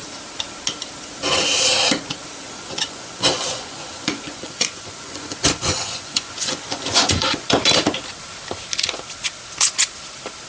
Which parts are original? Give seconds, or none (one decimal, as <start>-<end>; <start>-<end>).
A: 0.0-2.3; 7.5-10.5

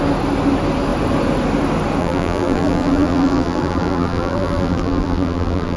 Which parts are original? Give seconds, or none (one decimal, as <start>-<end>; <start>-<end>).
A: 0.0-2.0